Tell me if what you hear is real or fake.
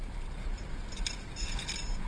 real